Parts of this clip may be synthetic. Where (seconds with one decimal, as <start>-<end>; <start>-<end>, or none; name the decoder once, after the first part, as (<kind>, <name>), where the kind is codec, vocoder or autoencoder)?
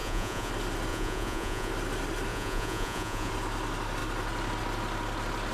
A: 0.0-0.5 (vocoder, Vocos); 0.9-1.7; 2.3-3.3